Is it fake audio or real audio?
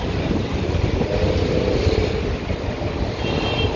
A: real